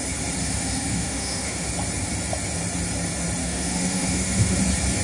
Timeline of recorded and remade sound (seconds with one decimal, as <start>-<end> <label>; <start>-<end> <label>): 0.0-0.4 recorded; 0.4-1.7 remade; 1.7-3.4 recorded; 3.4-4.6 remade; 4.6-5.0 recorded